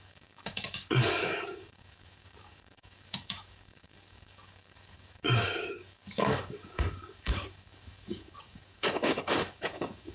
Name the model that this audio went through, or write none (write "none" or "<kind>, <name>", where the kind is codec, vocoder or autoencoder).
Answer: codec, DAC